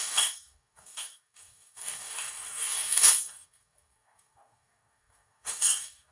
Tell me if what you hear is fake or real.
fake